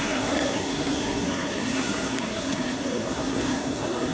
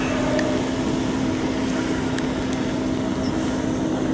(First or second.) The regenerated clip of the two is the first